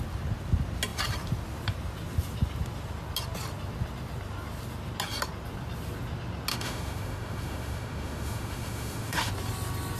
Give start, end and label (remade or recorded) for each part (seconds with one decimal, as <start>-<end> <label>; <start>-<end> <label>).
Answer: 0.0-6.5 recorded; 6.5-9.3 remade; 9.3-10.0 recorded